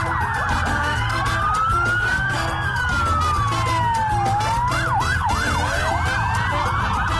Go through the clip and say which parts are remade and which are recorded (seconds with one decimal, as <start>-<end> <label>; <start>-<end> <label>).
0.0-0.7 recorded; 0.7-1.2 remade; 1.2-2.0 recorded; 2.0-2.8 remade; 2.8-7.2 recorded